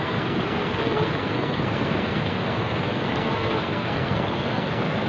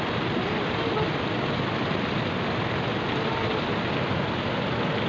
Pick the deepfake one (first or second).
first